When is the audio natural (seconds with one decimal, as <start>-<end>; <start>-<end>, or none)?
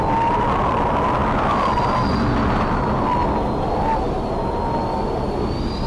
0.0-5.9